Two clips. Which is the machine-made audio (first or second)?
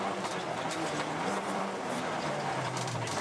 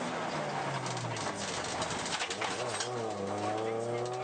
first